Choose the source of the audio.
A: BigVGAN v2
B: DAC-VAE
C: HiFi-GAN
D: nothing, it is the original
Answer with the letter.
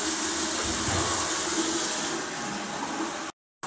D